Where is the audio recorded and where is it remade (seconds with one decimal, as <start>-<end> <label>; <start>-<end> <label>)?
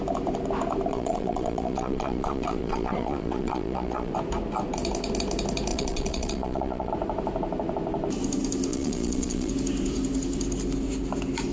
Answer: 0.0-0.9 recorded; 0.9-4.1 remade; 4.1-5.7 recorded; 5.7-6.9 remade; 6.9-8.7 recorded; 8.7-9.5 remade; 9.5-11.5 recorded